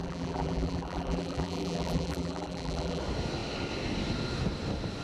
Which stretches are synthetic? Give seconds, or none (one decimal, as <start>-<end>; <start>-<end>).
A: 0.0-3.0